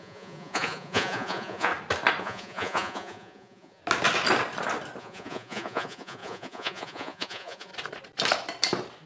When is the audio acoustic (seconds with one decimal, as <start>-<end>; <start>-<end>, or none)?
1.7-2.2; 3.8-5.0; 7.7-9.1